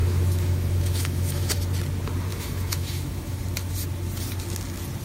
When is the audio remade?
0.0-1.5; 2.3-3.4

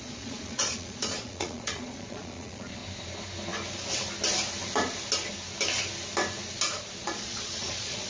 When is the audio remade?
0.0-2.8; 7.0-8.1

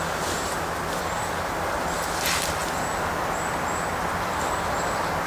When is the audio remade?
2.6-3.6